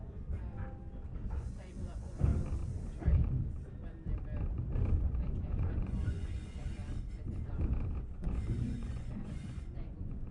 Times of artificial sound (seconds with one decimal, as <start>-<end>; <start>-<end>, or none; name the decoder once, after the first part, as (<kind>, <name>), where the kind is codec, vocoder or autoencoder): 0.0-0.6 (vocoder, Vocos); 1.3-2.3; 4.9-6.8; 8.0-10.3